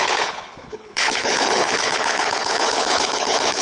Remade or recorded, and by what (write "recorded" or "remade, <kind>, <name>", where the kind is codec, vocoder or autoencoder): remade, codec, HILCodec